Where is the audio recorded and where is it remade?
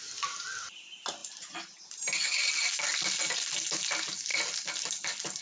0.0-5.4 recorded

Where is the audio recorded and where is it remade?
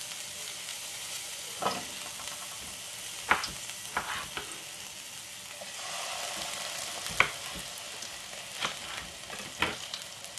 0.0-0.7 recorded; 0.7-1.6 remade; 1.6-10.4 recorded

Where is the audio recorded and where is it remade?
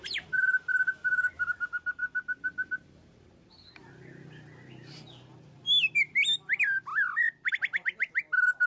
0.0-8.7 recorded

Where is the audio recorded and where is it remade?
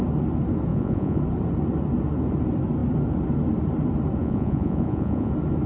0.0-0.7 recorded; 0.7-1.2 remade; 1.2-4.2 recorded; 4.2-5.3 remade; 5.3-5.7 recorded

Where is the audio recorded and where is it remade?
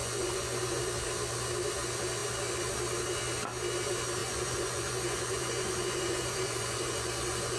0.0-0.8 remade; 0.8-4.2 recorded; 4.2-7.6 remade